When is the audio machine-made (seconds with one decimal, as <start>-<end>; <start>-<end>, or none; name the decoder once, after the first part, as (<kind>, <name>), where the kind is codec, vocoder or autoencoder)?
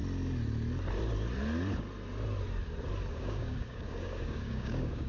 3.1-5.1 (codec, DAC)